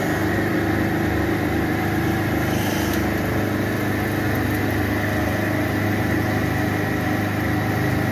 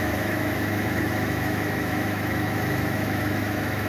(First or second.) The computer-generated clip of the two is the second